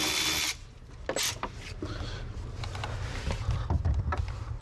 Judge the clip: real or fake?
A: real